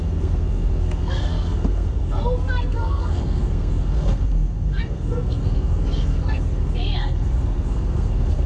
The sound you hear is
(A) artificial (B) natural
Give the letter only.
A